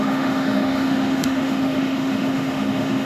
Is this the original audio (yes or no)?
no